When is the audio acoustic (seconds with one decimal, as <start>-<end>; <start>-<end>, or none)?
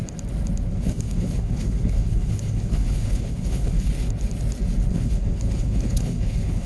0.0-0.7; 3.9-4.9